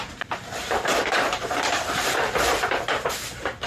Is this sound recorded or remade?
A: remade